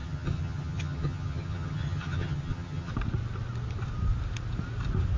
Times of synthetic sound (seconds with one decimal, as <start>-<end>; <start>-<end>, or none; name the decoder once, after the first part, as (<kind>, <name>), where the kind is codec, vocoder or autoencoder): 0.0-2.9 (vocoder, HiFi-GAN)